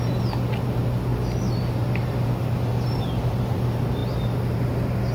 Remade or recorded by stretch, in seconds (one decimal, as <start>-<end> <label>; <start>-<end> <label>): 0.0-1.1 recorded; 1.1-2.3 remade; 2.3-4.0 recorded; 4.0-5.1 remade